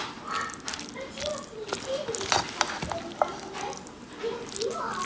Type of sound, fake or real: real